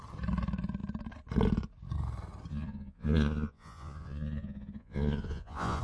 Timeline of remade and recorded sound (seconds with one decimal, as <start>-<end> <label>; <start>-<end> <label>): 0.0-2.5 recorded; 2.5-5.8 remade